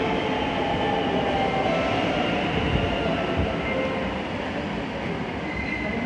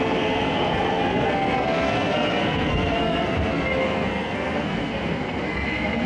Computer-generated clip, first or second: second